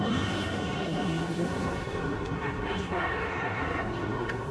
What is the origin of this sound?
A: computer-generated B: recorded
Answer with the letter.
A